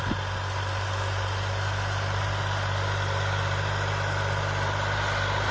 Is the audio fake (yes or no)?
no